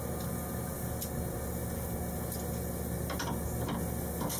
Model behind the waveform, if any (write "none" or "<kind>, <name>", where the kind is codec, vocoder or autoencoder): none